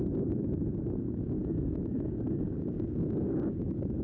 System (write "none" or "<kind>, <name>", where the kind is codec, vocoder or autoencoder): codec, DAC